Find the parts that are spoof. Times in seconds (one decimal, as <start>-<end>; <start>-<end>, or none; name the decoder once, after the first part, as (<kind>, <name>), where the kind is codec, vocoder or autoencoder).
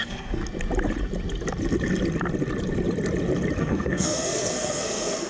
0.0-0.4 (codec, SNAC); 3.6-5.3